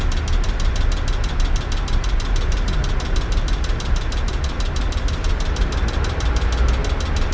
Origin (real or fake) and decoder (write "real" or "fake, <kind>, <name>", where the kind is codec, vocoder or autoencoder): real